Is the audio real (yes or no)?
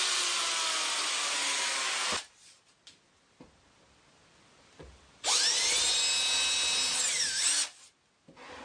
yes